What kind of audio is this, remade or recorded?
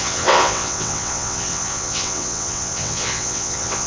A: remade